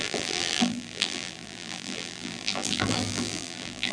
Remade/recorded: remade